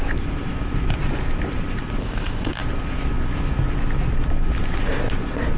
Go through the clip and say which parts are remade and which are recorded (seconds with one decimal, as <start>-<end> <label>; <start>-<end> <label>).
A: 0.0-2.0 recorded; 2.0-2.5 remade; 2.5-5.6 recorded